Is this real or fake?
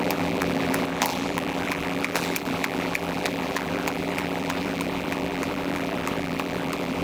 fake